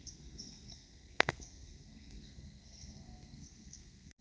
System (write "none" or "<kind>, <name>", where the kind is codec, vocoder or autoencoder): codec, SNAC